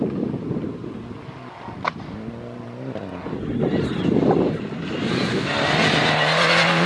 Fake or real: real